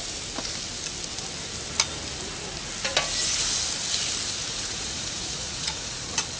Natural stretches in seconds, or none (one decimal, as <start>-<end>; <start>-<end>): 0.0-4.4; 6.0-6.4